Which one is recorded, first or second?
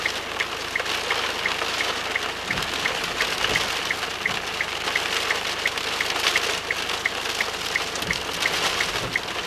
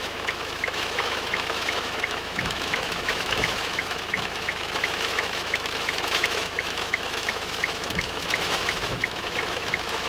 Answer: first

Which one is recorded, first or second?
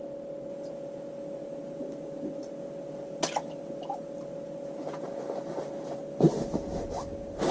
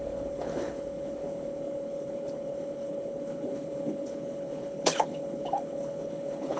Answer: first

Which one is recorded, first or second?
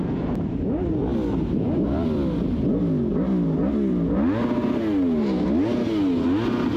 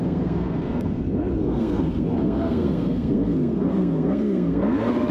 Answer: first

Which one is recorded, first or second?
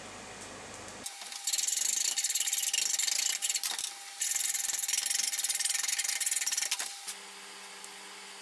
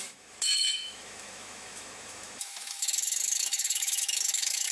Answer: first